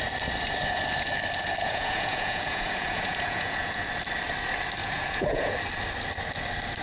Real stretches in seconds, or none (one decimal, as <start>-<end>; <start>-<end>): 0.0-1.6; 3.8-4.8; 5.5-6.8